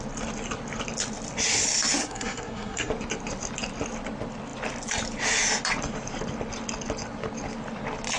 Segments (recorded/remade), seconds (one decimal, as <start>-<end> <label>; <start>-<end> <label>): 0.0-2.0 recorded; 2.0-2.9 remade; 2.9-8.2 recorded